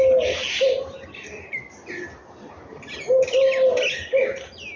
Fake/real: real